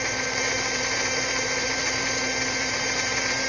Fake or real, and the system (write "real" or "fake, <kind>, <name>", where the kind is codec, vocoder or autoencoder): fake, vocoder, BigVGAN v2